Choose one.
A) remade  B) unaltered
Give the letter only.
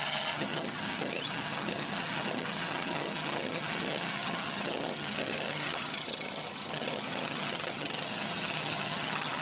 A